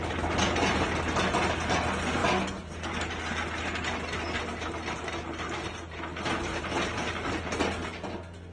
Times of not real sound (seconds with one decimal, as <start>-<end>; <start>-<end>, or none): none